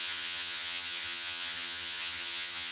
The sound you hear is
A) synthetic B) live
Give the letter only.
A